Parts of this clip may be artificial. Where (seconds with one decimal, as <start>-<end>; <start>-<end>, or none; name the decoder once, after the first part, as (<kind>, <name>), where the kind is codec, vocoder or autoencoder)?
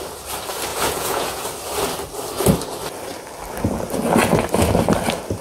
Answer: 0.7-1.4 (vocoder, Vocos)